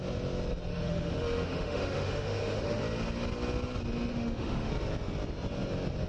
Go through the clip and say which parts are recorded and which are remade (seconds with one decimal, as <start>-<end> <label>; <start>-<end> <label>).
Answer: 0.0-0.7 recorded; 0.7-2.8 remade; 2.8-4.1 recorded; 4.1-4.7 remade; 4.7-6.1 recorded